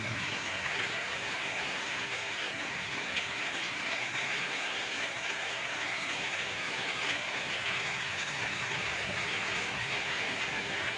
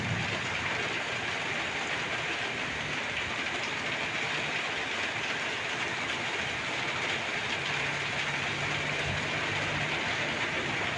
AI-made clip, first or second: first